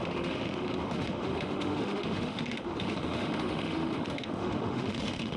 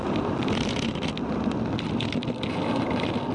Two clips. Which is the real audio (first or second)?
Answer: second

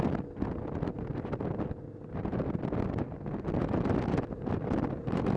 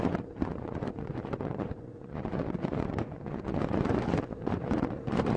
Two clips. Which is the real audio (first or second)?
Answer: first